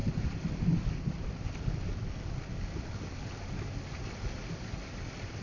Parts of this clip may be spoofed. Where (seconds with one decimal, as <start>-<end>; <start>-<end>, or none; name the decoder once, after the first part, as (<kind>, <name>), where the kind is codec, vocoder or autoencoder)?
none